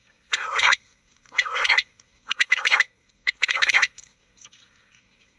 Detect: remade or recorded remade